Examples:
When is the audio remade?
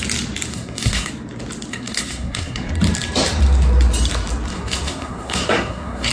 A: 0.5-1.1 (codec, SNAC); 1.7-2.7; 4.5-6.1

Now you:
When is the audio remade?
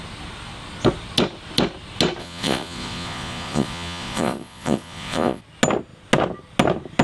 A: 2.2-5.4 (vocoder, Vocos)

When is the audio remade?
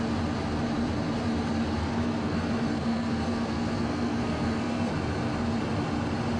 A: 1.8-4.9 (codec, SNAC)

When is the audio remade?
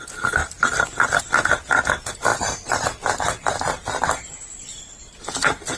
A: 2.3-2.8 (vocoder, BigVGAN v2)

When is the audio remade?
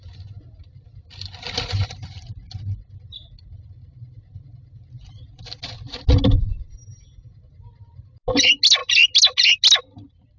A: none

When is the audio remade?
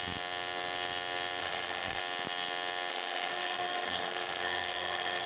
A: 1.4-2.0 (codec, SNAC); 2.9-5.3